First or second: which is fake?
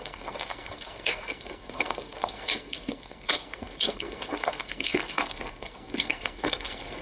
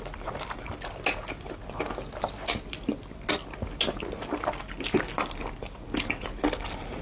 first